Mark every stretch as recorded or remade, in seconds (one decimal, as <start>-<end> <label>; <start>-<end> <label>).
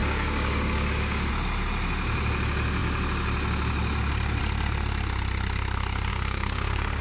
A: 0.0-1.3 remade; 1.3-6.1 recorded; 6.1-7.0 remade